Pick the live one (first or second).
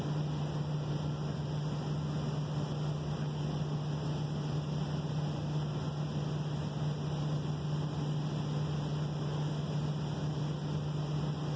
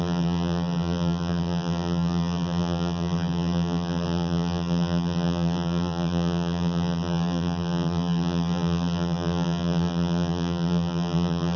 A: first